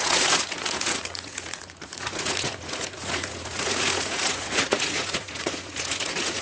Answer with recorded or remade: remade